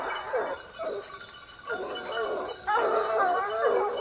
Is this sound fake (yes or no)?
no